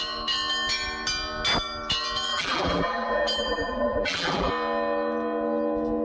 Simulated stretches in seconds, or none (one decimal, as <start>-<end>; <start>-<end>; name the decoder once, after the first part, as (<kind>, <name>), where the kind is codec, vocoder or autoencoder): 2.3-4.5 (vocoder, BigVGAN v2)